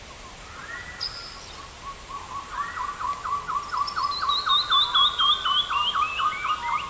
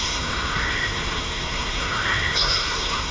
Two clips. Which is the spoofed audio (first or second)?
second